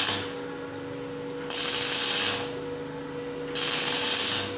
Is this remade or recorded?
recorded